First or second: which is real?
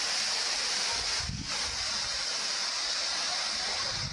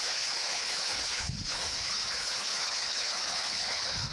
first